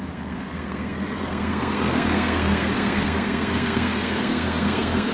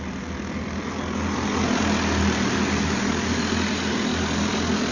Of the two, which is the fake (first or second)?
first